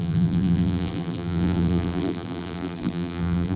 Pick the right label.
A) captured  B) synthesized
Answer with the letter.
B